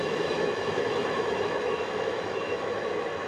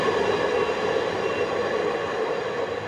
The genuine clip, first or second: second